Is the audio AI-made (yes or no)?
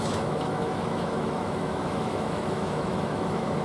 yes